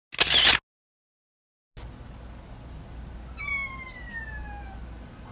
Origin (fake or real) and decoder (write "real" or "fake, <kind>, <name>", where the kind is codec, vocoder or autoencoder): real